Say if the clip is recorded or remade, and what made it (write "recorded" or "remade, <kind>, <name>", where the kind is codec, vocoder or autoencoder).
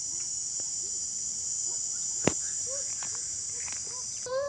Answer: recorded